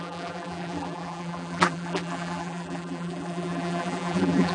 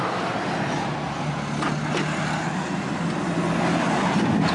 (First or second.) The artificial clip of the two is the first